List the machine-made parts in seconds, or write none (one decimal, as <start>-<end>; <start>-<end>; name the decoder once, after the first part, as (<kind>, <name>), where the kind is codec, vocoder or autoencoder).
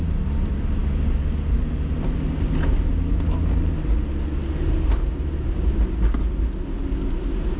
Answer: none